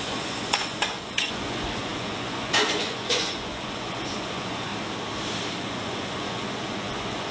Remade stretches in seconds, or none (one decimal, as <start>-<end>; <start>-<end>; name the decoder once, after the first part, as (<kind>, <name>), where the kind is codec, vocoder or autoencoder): 0.0-4.7 (vocoder, Vocos); 5.6-7.3